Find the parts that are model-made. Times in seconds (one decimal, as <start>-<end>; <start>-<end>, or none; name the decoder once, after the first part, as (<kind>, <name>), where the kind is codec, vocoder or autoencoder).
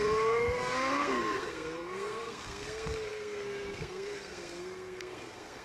0.0-5.6 (codec, SNAC)